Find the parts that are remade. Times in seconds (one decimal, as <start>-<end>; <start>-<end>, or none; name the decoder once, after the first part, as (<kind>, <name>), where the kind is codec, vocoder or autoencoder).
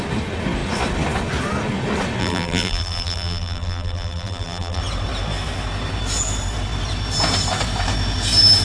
2.2-4.8 (vocoder, BigVGAN v2)